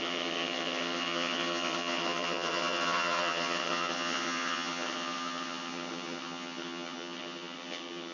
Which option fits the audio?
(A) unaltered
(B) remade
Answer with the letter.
B